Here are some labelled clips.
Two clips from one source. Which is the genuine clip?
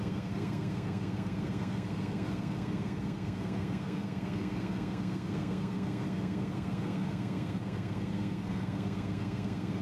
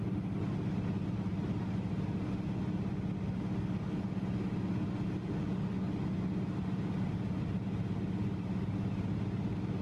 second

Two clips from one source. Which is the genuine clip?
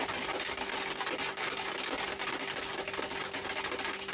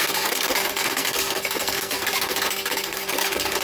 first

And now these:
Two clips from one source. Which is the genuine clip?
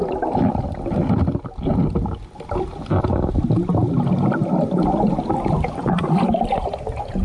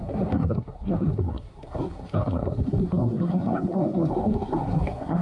first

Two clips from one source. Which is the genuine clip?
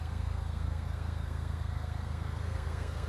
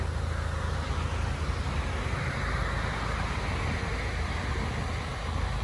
second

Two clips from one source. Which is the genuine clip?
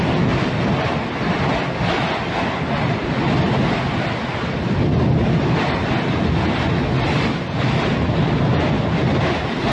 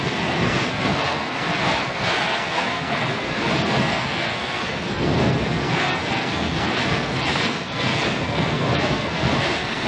first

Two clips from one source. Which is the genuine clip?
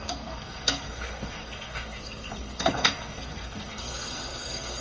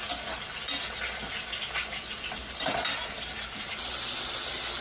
second